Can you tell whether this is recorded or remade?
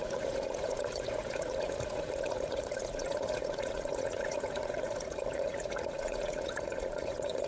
remade